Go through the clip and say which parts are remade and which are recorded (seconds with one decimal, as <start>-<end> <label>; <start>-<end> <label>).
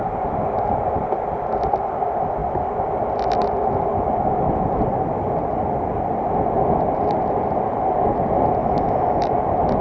0.0-8.6 recorded; 8.6-9.3 remade; 9.3-9.8 recorded